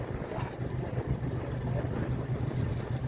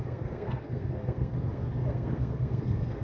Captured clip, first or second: first